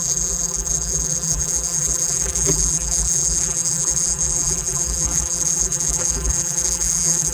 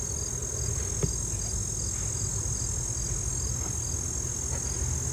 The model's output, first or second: first